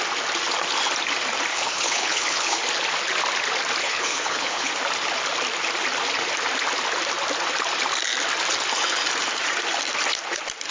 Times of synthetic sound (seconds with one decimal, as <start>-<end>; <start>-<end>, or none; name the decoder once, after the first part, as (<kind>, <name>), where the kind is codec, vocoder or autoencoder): 1.5-2.6 (codec, HILCodec); 3.8-4.7